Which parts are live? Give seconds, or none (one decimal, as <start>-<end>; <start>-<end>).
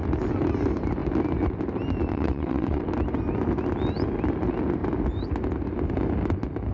0.0-2.1; 2.8-6.7